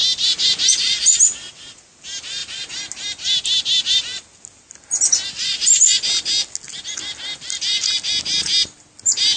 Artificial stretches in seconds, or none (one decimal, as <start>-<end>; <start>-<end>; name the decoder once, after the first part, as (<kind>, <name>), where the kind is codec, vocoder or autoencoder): none